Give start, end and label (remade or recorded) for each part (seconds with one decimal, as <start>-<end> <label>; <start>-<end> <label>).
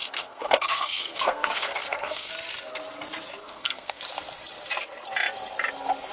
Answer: 0.0-2.3 remade; 2.3-3.4 recorded; 3.4-4.0 remade; 4.0-6.1 recorded